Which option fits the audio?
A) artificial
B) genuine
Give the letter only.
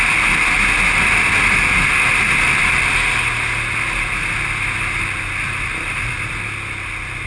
B